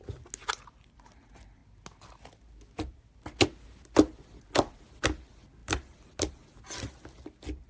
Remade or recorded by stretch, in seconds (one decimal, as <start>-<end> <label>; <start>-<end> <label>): 0.0-7.7 recorded